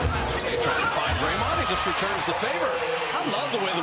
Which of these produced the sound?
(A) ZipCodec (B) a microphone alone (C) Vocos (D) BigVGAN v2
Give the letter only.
C